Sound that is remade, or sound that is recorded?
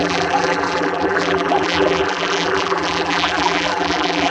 remade